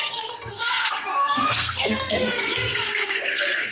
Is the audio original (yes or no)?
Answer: no